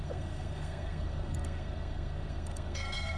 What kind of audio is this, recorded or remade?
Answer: remade